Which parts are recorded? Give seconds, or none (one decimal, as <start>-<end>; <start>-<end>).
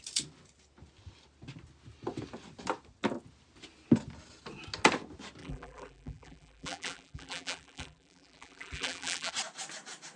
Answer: 0.0-5.4; 9.3-10.2